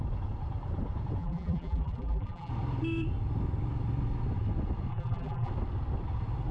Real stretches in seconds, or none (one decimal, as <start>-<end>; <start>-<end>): 0.0-1.2; 2.5-4.9; 5.5-6.5